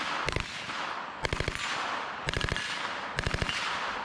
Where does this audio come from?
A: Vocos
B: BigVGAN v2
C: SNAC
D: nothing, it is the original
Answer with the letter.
D